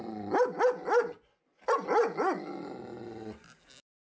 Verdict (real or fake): real